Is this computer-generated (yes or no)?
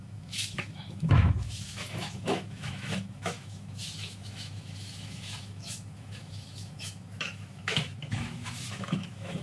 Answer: yes